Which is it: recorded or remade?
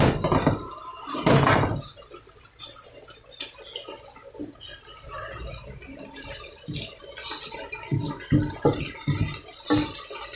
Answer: recorded